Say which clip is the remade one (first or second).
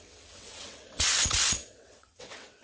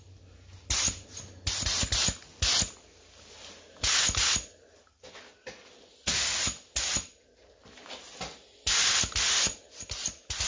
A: first